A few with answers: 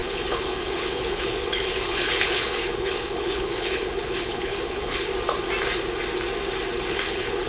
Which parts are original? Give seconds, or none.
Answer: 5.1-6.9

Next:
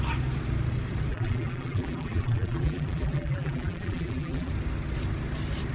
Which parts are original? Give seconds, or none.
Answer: 0.0-1.1; 4.5-5.7

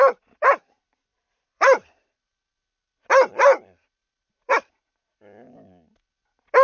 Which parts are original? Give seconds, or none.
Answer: 0.0-1.1; 2.4-4.0; 4.7-6.6

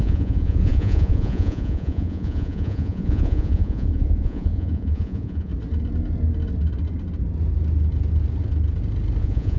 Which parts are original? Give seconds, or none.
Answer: 5.5-9.2